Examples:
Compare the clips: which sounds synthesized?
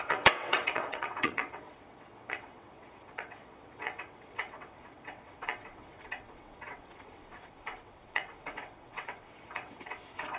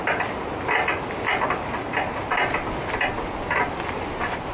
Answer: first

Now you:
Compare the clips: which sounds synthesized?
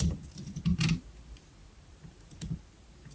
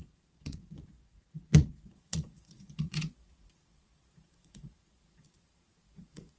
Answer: second